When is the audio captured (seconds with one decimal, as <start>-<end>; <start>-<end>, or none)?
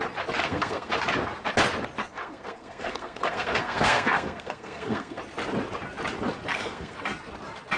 0.0-0.4; 0.9-2.0; 5.2-6.5; 7.0-7.8